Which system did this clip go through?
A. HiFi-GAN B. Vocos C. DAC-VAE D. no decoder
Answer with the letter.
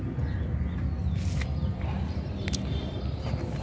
D